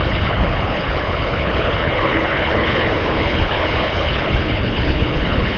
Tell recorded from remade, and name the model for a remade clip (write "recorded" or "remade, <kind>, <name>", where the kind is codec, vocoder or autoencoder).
remade, codec, HILCodec